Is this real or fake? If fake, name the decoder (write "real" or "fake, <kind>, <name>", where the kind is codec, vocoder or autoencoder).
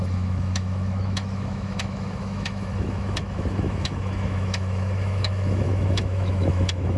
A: fake, autoencoder, DAC-VAE